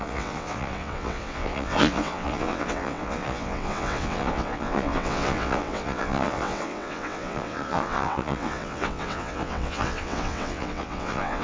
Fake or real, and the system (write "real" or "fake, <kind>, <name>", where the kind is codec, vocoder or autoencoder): fake, vocoder, WaveNeXt